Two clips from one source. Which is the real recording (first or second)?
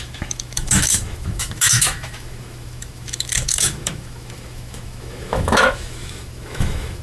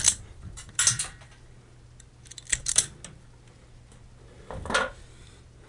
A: second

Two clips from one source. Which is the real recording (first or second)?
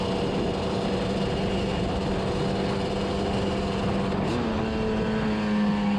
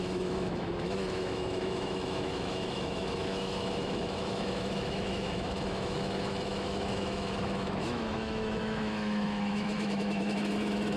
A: first